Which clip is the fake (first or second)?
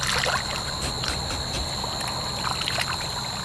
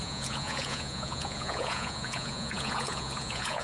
second